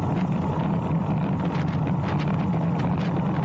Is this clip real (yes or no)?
yes